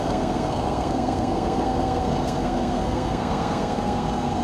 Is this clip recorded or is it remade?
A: remade